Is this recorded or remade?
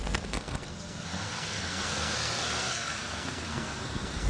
remade